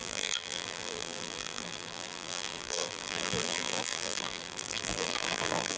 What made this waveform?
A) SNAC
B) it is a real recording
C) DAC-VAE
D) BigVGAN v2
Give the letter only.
D